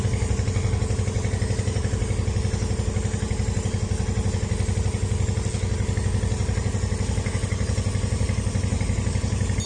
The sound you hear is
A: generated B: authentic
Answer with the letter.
B